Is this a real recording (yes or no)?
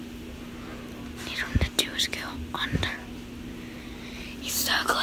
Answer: yes